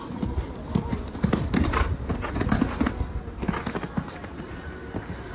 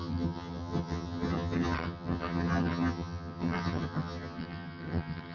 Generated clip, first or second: second